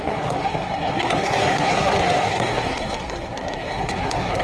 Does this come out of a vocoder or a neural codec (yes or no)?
yes